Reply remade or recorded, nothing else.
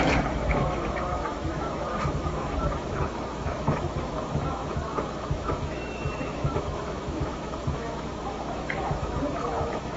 remade